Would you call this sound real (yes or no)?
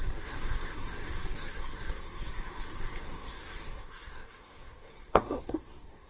no